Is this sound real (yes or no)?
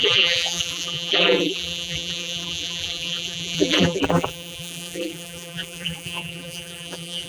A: no